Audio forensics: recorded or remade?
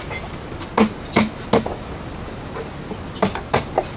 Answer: recorded